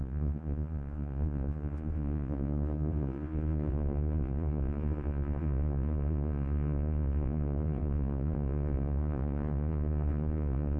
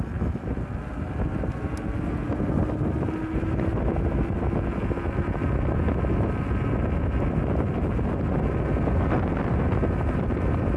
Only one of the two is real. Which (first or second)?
second